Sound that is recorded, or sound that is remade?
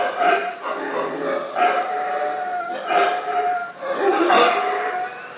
recorded